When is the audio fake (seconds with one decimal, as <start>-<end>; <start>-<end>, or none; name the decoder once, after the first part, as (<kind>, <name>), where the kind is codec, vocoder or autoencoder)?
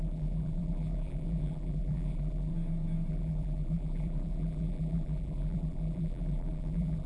0.0-2.5 (vocoder, BigVGAN v2); 3.1-7.1